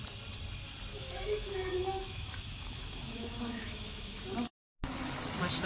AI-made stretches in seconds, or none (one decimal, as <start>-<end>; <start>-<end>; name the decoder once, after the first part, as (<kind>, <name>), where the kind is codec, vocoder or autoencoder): 0.9-4.2 (autoencoder, DAC-VAE)